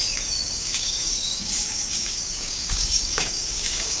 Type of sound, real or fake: fake